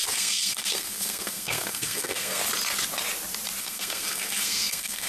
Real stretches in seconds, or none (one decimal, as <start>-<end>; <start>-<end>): 2.4-3.6